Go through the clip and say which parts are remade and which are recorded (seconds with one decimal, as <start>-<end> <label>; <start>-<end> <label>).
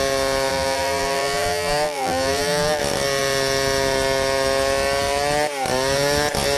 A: 0.0-0.5 recorded; 0.5-2.8 remade; 2.8-6.6 recorded